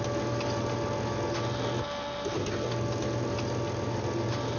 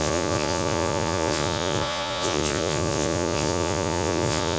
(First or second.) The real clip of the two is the first